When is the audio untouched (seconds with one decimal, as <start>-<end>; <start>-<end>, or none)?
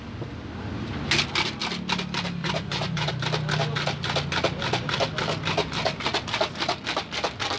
0.0-2.4; 3.1-7.6